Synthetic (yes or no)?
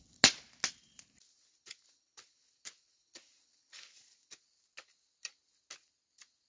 no